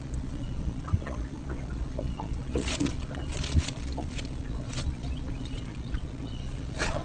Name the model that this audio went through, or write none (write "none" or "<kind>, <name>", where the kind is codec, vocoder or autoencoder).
vocoder, Vocos